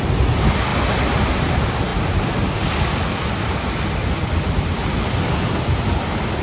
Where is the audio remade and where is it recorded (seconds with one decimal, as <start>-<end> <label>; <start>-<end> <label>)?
0.0-6.4 recorded